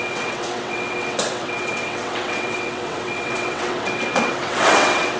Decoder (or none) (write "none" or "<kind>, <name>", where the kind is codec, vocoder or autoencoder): vocoder, WaveNeXt